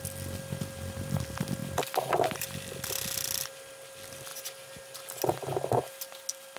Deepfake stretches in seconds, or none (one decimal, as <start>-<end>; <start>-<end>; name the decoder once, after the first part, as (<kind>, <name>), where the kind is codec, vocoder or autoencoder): none